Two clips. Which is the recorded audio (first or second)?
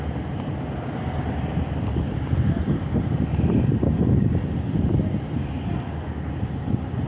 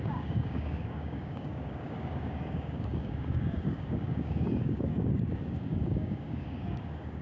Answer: first